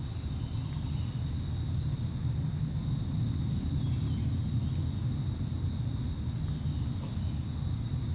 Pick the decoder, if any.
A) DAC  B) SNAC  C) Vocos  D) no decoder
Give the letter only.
D